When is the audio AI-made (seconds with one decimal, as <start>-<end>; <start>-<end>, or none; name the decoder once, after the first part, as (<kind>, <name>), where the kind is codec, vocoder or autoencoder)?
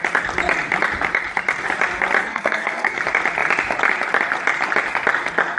2.2-3.0 (codec, SNAC)